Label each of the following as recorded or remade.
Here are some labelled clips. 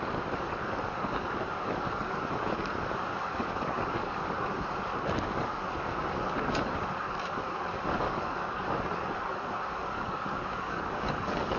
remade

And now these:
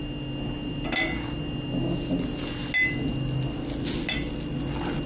recorded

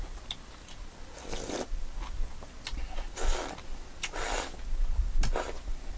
recorded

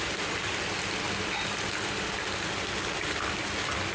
recorded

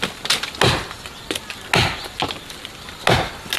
recorded